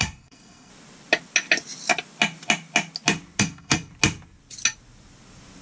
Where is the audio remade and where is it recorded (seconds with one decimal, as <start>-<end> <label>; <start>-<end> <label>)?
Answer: 0.0-0.7 remade; 0.7-3.4 recorded; 3.4-3.9 remade; 3.9-5.6 recorded